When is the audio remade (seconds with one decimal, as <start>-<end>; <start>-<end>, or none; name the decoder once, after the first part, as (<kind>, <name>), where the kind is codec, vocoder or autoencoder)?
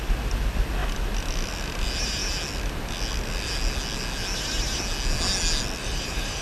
5.8-6.4 (vocoder, BigVGAN v2)